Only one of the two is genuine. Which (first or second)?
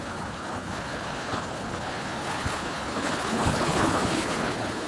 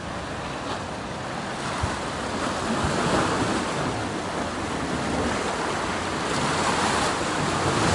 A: second